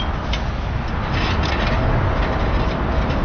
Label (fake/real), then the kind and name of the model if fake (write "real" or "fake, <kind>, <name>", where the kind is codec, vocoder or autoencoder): real